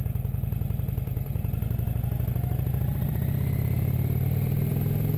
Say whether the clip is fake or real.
fake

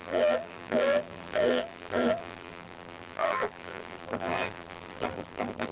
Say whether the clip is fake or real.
fake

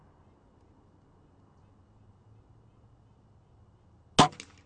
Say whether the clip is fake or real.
real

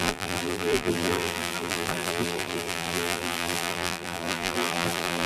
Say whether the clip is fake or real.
fake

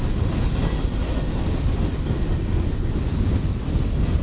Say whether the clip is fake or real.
real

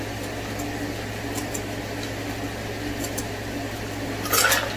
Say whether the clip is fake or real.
real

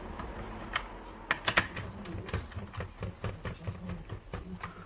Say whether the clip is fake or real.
real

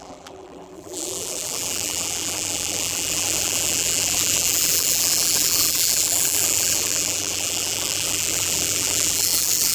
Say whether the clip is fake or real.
fake